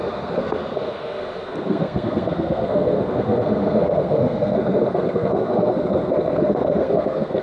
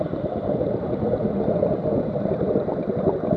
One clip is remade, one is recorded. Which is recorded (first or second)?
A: second